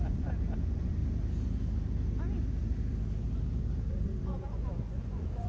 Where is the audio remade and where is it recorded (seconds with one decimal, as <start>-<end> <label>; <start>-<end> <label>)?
0.0-1.0 remade; 1.0-3.9 recorded; 3.9-5.5 remade